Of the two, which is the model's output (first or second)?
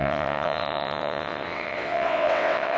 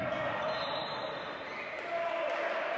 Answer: first